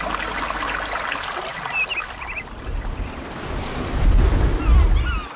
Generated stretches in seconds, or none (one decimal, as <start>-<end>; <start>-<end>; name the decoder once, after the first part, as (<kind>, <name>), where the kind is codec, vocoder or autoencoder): none